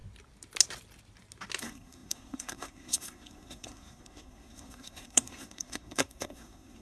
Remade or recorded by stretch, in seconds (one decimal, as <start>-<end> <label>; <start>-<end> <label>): 0.0-1.6 recorded; 1.6-6.8 remade